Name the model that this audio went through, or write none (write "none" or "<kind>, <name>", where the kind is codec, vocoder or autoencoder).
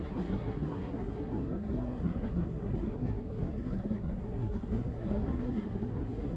codec, SNAC